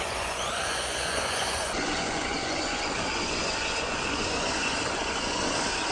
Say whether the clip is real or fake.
fake